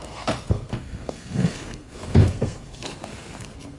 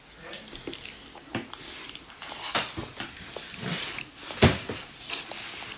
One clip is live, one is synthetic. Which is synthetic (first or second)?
first